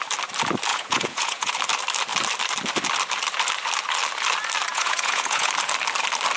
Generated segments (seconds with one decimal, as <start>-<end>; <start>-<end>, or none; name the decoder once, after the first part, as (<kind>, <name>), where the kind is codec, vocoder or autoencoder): 0.7-1.5 (vocoder, Vocos); 4.7-5.5

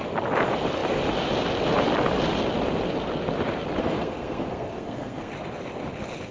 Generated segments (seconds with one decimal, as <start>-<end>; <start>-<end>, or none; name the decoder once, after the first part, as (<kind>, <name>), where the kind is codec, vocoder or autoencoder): 3.8-5.3 (codec, SNAC)